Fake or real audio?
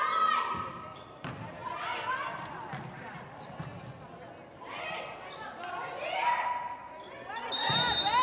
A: real